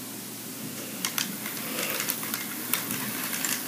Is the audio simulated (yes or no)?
no